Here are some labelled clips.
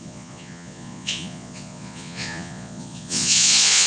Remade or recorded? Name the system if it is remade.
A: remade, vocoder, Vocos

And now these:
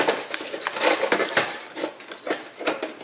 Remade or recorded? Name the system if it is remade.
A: recorded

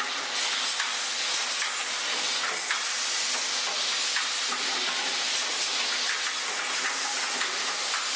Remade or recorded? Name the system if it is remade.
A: recorded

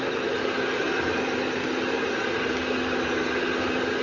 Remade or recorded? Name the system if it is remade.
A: recorded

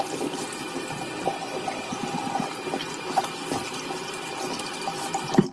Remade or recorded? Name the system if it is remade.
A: recorded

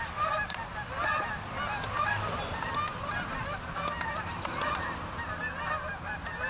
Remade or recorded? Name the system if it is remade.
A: recorded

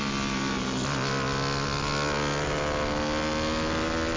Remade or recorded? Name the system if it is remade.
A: recorded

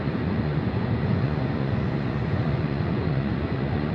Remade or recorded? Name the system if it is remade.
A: remade, vocoder, Vocos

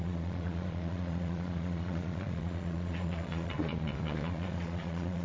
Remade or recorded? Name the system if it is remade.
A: remade, vocoder, Vocos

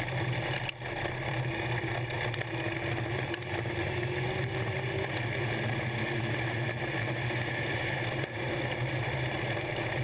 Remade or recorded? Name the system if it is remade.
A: recorded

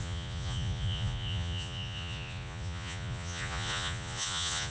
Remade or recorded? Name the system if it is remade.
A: remade, vocoder, Vocos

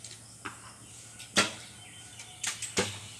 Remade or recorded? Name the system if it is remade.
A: recorded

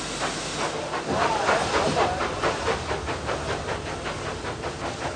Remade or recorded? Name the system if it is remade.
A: recorded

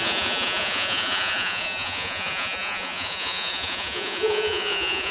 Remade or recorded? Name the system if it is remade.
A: remade, vocoder, Vocos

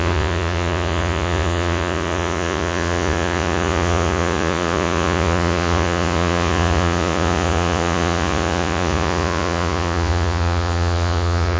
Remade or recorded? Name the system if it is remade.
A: remade, vocoder, Vocos